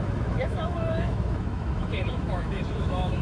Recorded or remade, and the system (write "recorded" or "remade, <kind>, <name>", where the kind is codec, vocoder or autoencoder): remade, autoencoder, DAC-VAE